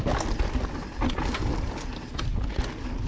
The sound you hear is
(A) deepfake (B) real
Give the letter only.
B